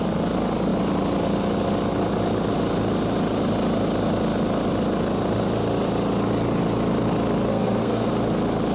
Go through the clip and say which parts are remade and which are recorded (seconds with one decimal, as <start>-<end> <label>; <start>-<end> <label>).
0.0-7.5 recorded; 7.5-8.1 remade; 8.1-8.7 recorded

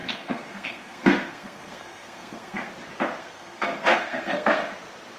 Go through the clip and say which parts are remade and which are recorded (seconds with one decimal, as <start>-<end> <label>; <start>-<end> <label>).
0.0-2.7 remade; 2.7-3.2 recorded; 3.2-4.6 remade; 4.6-5.2 recorded

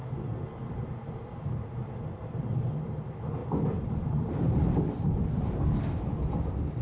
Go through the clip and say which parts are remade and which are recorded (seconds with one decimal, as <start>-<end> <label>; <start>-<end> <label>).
0.0-6.8 recorded

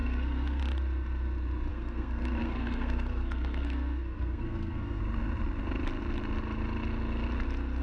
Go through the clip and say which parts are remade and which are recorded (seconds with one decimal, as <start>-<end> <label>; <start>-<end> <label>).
0.0-0.6 remade; 0.6-1.7 recorded; 1.7-5.0 remade; 5.0-7.8 recorded

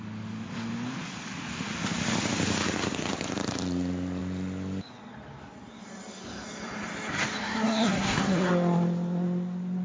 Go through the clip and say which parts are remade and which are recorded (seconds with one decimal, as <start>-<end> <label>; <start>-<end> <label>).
0.0-7.4 recorded; 7.4-8.5 remade; 8.5-9.8 recorded

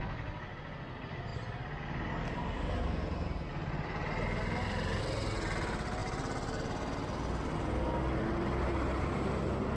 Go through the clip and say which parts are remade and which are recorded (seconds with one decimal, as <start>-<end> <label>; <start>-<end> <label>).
0.0-9.8 recorded

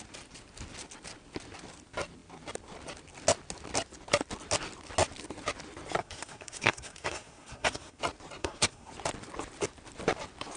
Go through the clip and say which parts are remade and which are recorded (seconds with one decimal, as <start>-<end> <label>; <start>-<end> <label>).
0.0-6.0 recorded; 6.0-8.0 remade; 8.0-8.4 recorded; 8.4-8.9 remade; 8.9-10.6 recorded